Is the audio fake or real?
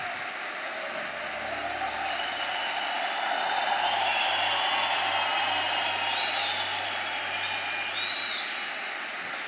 real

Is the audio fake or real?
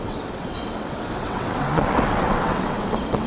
fake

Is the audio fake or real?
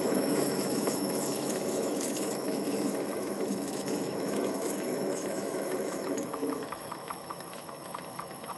fake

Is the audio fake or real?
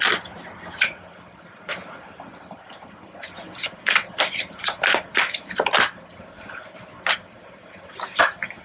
fake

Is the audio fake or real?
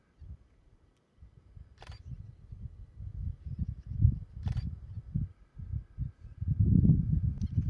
real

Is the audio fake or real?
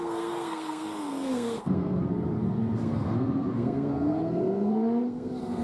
fake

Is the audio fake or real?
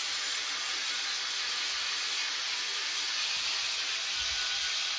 real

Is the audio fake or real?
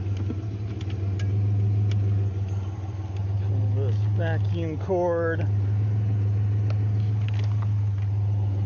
real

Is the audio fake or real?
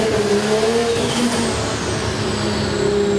real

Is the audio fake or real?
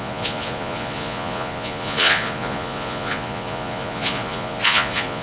fake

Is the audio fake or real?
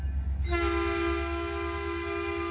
real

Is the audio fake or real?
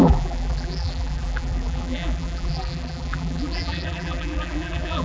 fake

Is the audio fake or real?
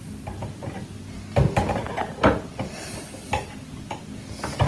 real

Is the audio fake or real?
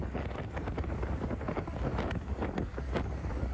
fake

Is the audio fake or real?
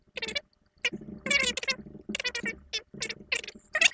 real